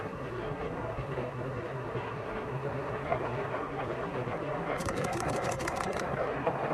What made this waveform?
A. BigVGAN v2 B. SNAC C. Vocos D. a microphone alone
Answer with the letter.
B